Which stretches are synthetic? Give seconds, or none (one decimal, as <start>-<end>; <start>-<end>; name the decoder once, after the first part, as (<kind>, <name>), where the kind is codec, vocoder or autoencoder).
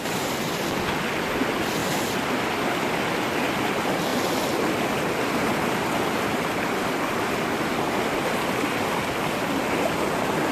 none